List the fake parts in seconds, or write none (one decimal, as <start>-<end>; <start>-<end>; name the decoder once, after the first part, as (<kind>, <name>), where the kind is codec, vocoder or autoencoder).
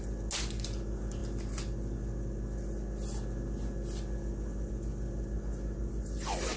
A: none